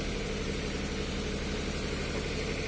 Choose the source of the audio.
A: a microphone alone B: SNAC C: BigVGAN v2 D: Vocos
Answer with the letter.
A